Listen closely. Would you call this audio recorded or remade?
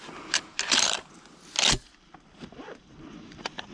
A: recorded